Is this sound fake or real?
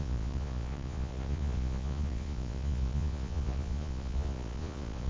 fake